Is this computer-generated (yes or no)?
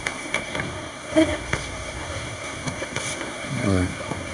yes